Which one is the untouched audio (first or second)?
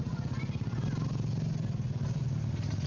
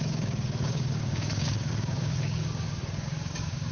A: first